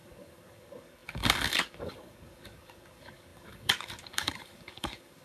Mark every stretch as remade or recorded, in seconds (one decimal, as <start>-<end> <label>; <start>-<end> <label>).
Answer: 0.0-5.2 remade